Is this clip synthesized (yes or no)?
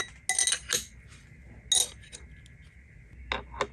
no